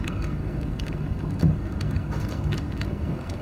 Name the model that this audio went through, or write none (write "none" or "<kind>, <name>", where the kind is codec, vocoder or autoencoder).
codec, SNAC